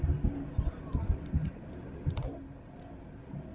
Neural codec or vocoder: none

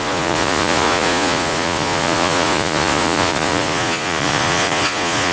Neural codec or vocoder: vocoder, Vocos